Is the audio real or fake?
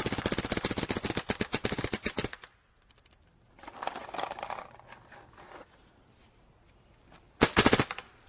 real